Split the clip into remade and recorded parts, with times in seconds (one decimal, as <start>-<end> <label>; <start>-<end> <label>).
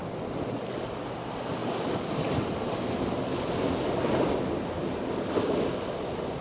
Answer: 0.0-6.4 recorded